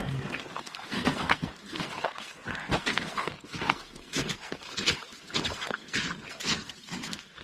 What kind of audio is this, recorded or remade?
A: remade